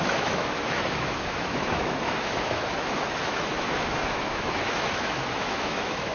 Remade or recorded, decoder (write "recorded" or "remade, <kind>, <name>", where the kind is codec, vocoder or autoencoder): remade, autoencoder, DAC-VAE